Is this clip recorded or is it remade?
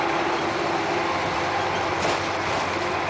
recorded